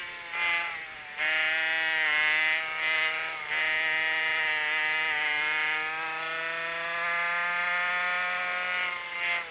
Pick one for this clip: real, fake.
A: real